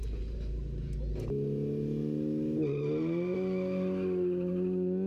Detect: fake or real real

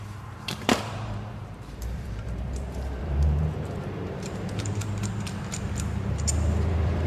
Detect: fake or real fake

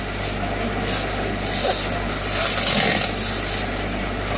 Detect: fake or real real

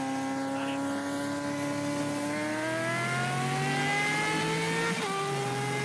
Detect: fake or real real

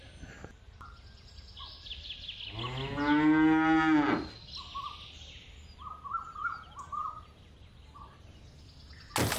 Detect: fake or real real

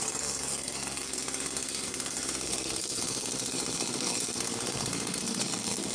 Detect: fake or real fake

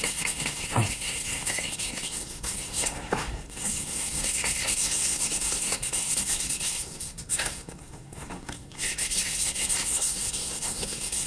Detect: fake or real fake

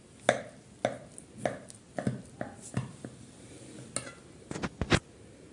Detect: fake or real real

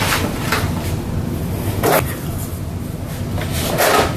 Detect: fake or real real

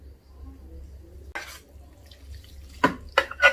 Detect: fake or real real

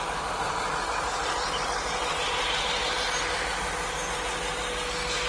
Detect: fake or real real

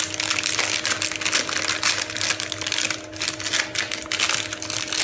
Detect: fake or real real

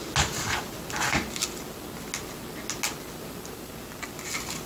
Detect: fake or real real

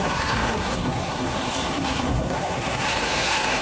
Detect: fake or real fake